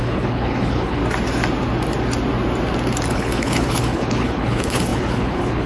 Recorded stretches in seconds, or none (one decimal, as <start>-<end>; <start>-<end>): 1.0-3.1